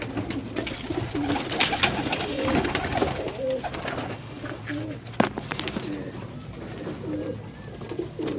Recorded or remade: recorded